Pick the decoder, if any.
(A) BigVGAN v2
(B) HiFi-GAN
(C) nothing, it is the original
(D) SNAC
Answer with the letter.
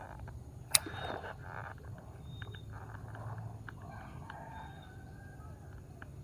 A